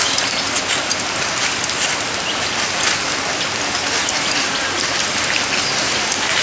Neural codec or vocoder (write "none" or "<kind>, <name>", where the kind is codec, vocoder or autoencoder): none